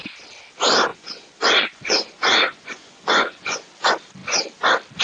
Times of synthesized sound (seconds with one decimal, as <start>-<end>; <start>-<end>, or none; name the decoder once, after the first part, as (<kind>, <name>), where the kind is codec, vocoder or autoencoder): 0.9-3.7 (vocoder, Vocos)

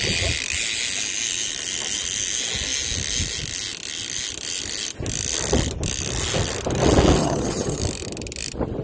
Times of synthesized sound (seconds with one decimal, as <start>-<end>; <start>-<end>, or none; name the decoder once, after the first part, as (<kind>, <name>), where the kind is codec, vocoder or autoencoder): 7.2-7.8 (vocoder, HiFi-GAN)

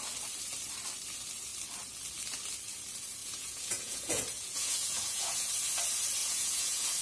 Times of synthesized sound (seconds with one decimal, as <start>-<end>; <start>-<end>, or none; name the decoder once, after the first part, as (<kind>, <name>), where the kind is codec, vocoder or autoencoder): 3.2-5.5 (vocoder, Vocos); 6.2-7.0